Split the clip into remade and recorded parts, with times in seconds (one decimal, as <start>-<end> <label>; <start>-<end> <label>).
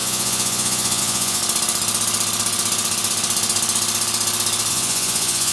0.0-1.4 remade; 1.4-4.7 recorded; 4.7-5.5 remade